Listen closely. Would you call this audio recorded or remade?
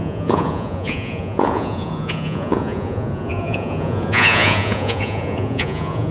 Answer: remade